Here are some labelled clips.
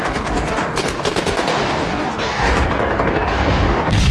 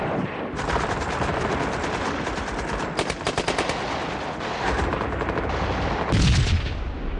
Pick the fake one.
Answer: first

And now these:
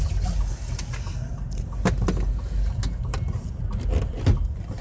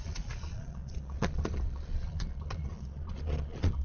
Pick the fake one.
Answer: second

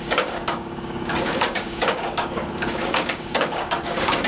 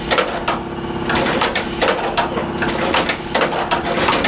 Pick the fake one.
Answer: first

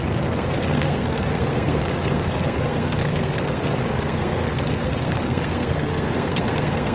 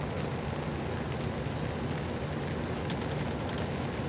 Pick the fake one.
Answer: first